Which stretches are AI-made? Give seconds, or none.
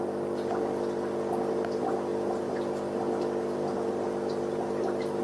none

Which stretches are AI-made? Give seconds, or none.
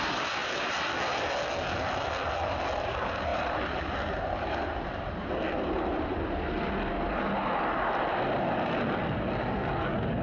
3.3-5.3 (vocoder, BigVGAN v2)